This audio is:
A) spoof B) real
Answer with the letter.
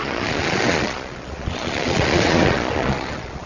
A